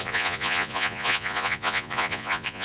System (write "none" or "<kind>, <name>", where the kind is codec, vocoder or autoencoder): vocoder, Vocos